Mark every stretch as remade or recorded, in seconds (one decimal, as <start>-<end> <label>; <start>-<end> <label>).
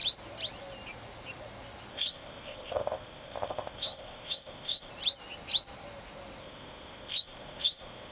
0.0-1.9 recorded; 1.9-4.9 remade; 4.9-6.4 recorded; 6.4-8.1 remade